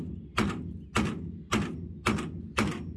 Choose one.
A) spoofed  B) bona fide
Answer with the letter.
B